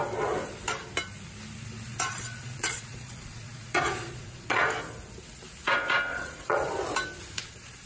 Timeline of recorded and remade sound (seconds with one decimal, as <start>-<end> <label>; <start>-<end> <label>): 0.0-1.9 recorded; 1.9-4.7 remade; 4.7-6.1 recorded; 6.1-6.7 remade; 6.7-7.4 recorded; 7.4-7.9 remade